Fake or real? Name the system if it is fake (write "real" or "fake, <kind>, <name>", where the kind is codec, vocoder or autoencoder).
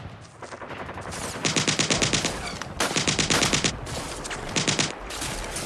real